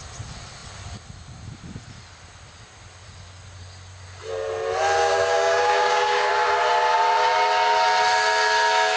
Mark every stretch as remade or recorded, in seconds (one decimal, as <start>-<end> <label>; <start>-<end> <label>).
0.0-5.0 recorded; 5.0-6.3 remade; 6.3-9.0 recorded